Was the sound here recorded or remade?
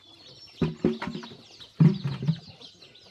recorded